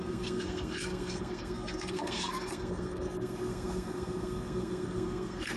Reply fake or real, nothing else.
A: fake